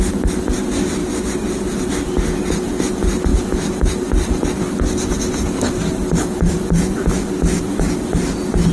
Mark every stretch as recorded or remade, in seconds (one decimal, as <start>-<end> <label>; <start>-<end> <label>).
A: 0.0-8.7 recorded